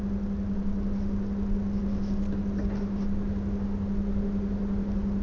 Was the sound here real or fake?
real